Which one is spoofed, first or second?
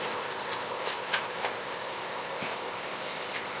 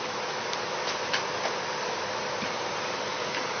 first